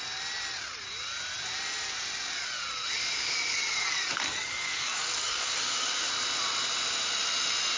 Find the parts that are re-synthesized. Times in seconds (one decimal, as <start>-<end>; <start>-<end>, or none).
3.0-6.1